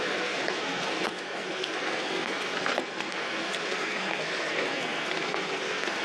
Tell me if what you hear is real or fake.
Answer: fake